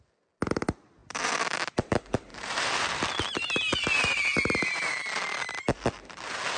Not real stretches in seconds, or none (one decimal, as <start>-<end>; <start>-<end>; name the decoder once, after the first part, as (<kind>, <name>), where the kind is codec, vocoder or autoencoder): 2.3-5.2 (vocoder, BigVGAN v2)